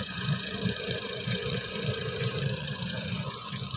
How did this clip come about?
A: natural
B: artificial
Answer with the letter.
B